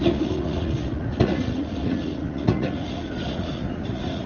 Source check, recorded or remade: remade